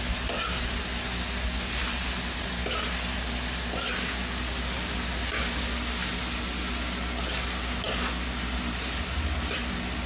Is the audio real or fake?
real